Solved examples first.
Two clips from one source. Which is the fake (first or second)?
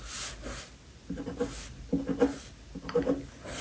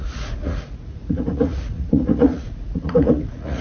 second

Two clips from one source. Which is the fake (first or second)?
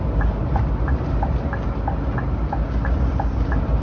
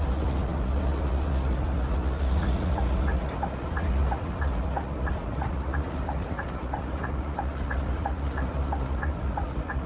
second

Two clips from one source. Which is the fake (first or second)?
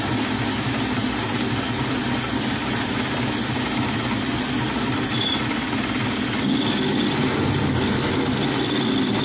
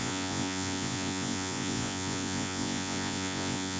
second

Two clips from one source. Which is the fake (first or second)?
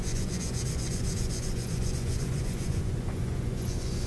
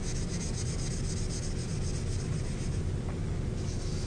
first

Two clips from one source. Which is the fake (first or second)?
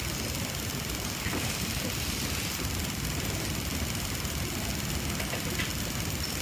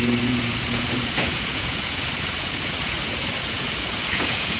second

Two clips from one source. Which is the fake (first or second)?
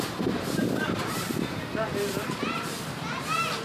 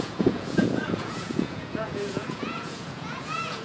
second